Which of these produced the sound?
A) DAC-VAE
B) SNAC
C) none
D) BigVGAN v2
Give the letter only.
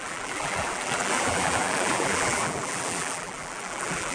D